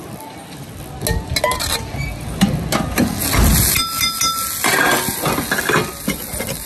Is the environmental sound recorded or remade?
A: recorded